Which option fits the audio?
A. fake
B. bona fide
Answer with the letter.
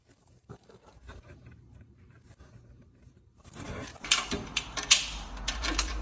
A